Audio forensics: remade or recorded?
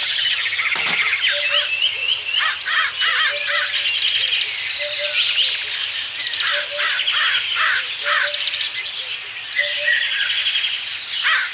recorded